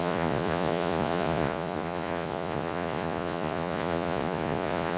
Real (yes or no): no